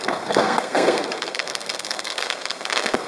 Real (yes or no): no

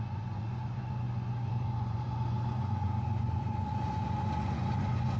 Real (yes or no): no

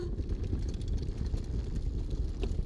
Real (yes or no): yes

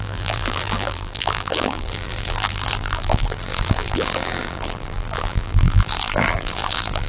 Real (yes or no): no